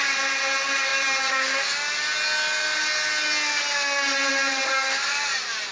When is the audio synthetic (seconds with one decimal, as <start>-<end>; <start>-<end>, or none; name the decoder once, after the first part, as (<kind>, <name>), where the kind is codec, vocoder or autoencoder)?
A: none